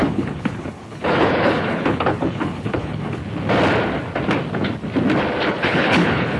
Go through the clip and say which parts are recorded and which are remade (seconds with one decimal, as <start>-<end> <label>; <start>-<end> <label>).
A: 0.0-3.2 remade; 3.2-5.5 recorded; 5.5-6.4 remade